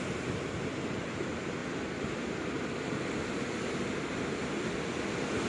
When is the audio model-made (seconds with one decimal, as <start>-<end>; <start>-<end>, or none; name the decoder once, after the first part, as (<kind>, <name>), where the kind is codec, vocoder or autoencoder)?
none